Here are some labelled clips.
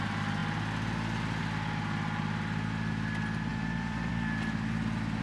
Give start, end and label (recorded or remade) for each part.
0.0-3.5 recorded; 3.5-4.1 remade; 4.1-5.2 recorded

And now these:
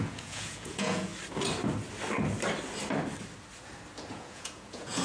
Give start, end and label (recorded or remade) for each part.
0.0-1.1 remade; 1.1-4.1 recorded; 4.1-5.0 remade